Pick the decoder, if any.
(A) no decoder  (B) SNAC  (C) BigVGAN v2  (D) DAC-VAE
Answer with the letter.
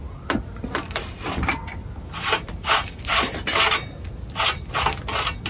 A